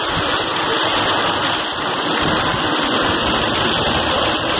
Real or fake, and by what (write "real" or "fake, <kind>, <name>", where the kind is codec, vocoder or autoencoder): real